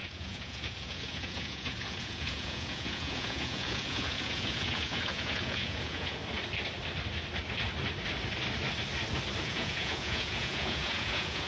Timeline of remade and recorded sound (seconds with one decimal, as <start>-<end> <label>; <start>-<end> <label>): 0.0-6.2 remade; 6.2-9.4 recorded; 9.4-11.5 remade

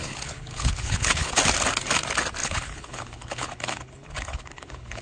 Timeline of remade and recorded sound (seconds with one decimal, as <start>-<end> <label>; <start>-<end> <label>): 0.0-1.3 remade; 1.3-2.4 recorded; 2.4-5.0 remade

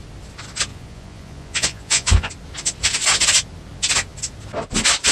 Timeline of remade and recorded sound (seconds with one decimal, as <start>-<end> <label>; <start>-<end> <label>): 0.0-0.7 recorded; 0.7-2.3 remade; 2.3-5.1 recorded

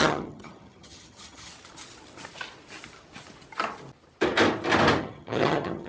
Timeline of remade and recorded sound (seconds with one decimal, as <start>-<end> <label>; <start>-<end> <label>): 0.0-1.5 remade; 1.5-5.0 recorded; 5.0-5.9 remade